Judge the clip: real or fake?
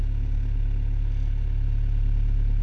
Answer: real